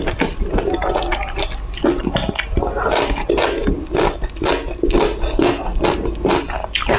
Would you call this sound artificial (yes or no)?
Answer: no